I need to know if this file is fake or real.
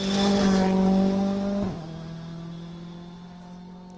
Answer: real